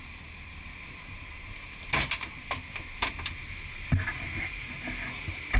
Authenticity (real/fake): real